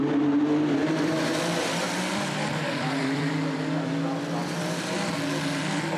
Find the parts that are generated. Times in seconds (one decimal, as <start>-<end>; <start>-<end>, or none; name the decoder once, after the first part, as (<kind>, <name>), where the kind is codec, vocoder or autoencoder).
0.8-3.2 (vocoder, BigVGAN v2)